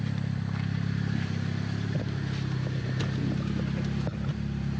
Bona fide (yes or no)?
yes